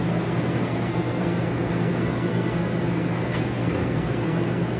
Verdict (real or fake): fake